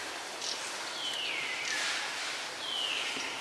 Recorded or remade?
recorded